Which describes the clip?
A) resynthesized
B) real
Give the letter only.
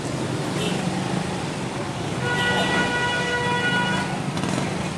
B